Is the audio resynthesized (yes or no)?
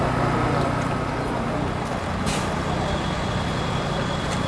no